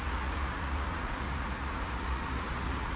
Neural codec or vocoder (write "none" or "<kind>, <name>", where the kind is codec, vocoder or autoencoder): vocoder, Vocos